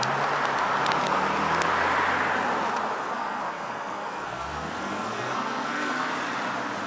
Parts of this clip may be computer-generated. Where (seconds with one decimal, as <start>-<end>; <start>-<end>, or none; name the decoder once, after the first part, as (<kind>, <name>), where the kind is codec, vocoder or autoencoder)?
3.0-6.1 (codec, SNAC)